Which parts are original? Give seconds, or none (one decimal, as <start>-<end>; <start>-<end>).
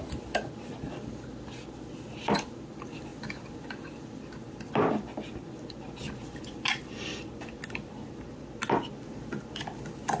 0.0-10.2